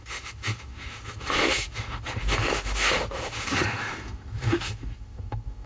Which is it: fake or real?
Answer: fake